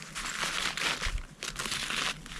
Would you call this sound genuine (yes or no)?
yes